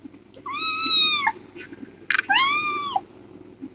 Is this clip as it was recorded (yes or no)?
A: yes